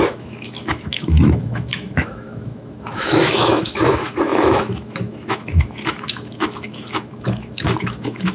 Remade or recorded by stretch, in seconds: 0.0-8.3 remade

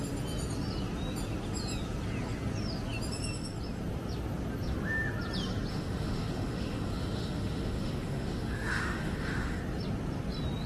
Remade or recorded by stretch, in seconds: 0.0-5.7 recorded; 5.7-9.6 remade; 9.6-10.7 recorded

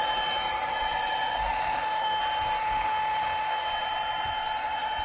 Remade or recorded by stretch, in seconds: 0.0-1.3 recorded; 1.3-2.2 remade; 2.2-2.6 recorded; 2.6-3.7 remade; 3.7-5.0 recorded

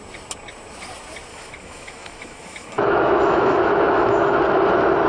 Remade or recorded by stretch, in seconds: 0.0-1.3 recorded; 1.3-4.4 remade; 4.4-5.1 recorded

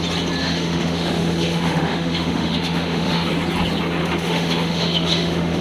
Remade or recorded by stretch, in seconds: 0.0-0.4 recorded; 0.4-3.3 remade; 3.3-4.0 recorded; 4.0-5.6 remade

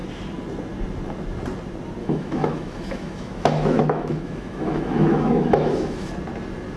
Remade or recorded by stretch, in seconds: 0.0-2.0 recorded; 2.0-6.1 remade; 6.1-6.8 recorded